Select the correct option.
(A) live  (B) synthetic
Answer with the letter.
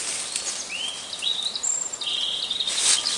A